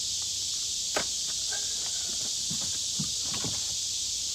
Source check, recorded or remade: recorded